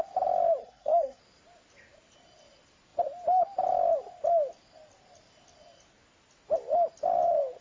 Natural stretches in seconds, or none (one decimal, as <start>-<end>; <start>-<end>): 0.0-0.6; 1.2-7.6